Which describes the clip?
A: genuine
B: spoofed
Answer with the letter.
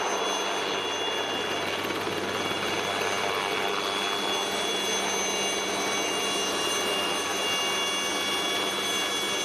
A